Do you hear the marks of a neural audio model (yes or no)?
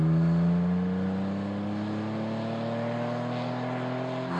no